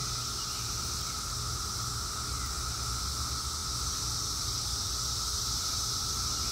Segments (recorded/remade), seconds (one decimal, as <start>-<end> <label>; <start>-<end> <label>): 0.0-6.5 recorded